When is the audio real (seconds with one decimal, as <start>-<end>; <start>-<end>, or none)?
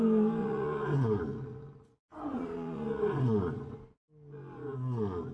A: 0.0-0.4; 1.2-1.9; 3.8-5.3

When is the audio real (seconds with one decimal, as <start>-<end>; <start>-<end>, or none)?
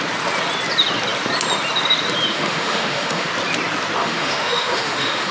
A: 0.0-2.3; 3.3-4.0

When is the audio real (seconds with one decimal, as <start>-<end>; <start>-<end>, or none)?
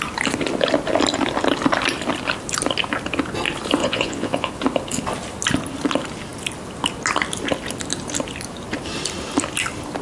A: 0.0-3.8; 4.5-10.0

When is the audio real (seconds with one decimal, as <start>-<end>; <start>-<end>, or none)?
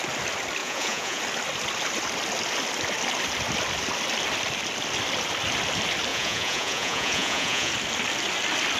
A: 0.0-0.6; 1.2-6.1; 7.7-8.8